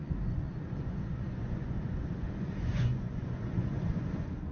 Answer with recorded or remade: remade